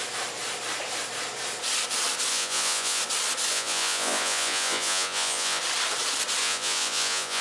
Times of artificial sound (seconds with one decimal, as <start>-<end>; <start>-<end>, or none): 2.3-3.0; 3.5-5.6; 6.4-7.4